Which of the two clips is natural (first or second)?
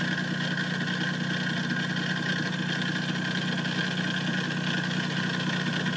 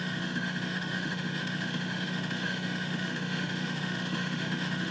first